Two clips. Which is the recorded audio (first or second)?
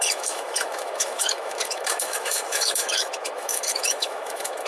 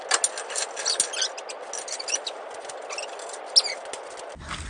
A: second